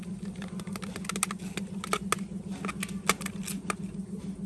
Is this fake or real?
real